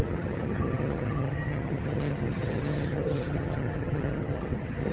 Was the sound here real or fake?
fake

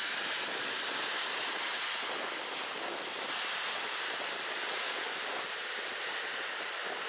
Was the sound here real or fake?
real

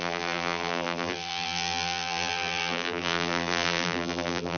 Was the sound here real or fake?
fake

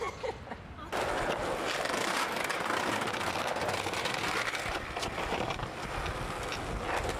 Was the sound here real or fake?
real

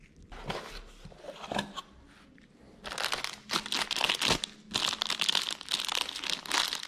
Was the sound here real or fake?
real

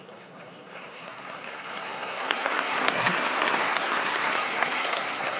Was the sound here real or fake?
fake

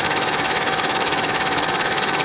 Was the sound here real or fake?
fake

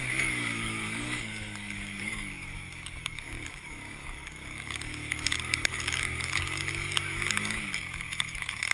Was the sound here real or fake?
fake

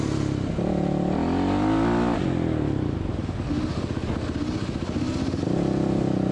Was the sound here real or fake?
real